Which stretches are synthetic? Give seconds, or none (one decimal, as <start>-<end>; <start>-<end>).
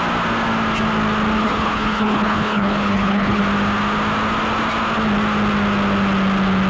1.4-3.4